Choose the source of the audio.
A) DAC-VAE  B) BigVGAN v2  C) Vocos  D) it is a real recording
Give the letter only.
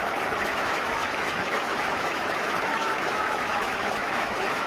A